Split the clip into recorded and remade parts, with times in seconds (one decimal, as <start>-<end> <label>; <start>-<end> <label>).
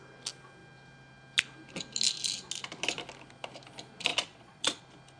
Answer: 0.0-4.1 recorded; 4.1-4.8 remade; 4.8-5.2 recorded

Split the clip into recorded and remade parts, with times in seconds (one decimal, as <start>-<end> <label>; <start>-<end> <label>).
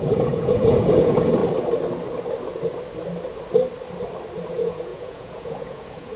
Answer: 0.0-1.4 remade; 1.4-4.5 recorded; 4.5-6.2 remade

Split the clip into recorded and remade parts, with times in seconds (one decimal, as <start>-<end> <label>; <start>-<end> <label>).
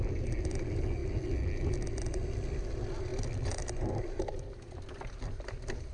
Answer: 0.0-5.9 recorded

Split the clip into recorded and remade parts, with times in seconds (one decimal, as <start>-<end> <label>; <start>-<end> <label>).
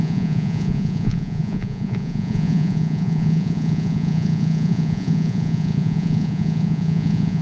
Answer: 0.0-7.4 remade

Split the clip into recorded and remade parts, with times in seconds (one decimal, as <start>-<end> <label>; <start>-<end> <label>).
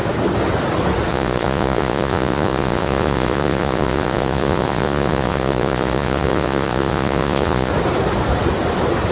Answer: 0.0-1.1 recorded; 1.1-7.7 remade; 7.7-9.1 recorded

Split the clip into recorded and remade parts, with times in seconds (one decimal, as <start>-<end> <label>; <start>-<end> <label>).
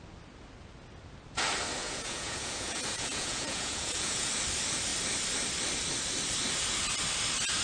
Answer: 0.0-1.8 recorded; 1.8-4.3 remade; 4.3-7.6 recorded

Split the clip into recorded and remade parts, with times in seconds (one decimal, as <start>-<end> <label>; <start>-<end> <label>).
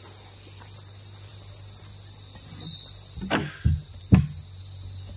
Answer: 0.0-5.2 recorded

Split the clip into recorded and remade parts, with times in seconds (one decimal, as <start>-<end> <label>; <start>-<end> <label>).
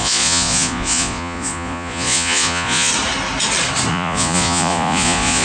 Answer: 0.0-2.9 remade; 2.9-3.9 recorded; 3.9-5.4 remade